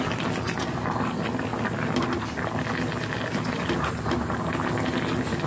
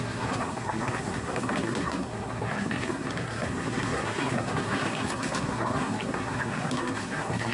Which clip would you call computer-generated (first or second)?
second